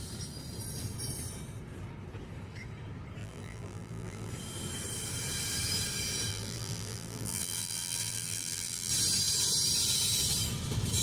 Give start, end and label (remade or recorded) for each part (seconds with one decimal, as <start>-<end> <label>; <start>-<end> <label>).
0.0-3.2 recorded; 3.2-4.3 remade; 4.3-6.3 recorded; 6.3-8.9 remade; 8.9-11.0 recorded